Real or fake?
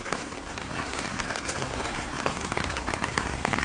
fake